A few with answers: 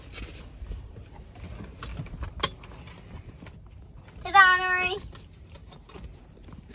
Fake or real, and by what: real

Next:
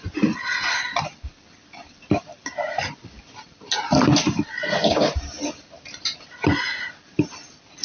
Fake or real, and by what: real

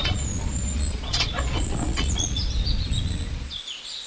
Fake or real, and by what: fake, vocoder, Vocos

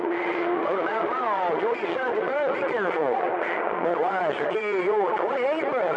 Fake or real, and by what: fake, vocoder, Vocos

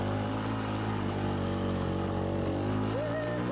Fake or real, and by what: real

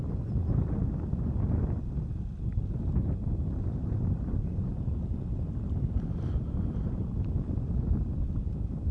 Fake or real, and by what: real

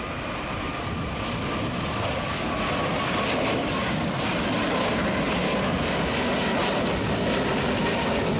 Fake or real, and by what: real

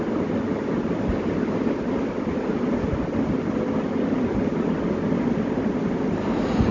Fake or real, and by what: real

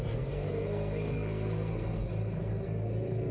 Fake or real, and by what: fake, codec, SNAC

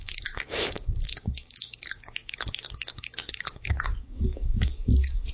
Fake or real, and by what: fake, codec, DAC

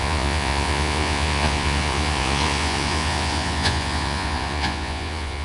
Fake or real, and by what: fake, vocoder, Vocos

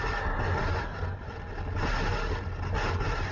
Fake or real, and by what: real